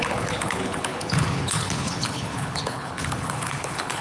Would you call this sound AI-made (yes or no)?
yes